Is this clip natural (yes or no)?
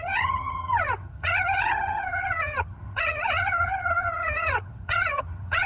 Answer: no